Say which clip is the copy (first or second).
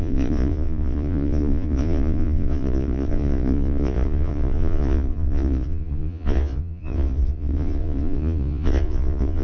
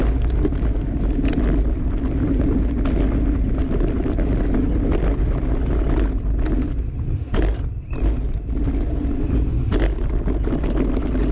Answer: first